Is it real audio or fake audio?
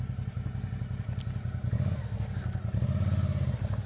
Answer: real